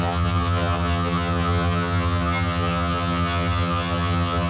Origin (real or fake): fake